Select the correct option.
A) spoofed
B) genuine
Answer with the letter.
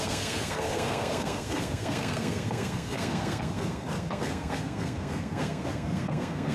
A